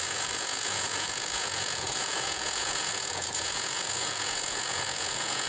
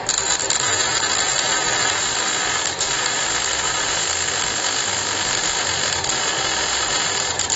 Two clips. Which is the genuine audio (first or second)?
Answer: second